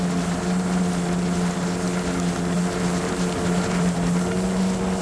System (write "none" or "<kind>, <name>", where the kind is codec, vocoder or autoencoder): none